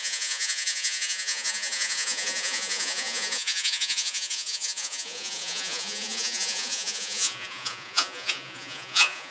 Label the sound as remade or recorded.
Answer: remade